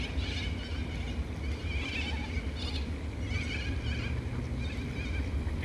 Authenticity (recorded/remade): recorded